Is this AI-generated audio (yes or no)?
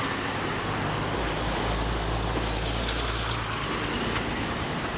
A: no